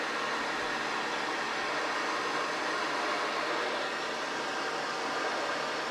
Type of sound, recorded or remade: recorded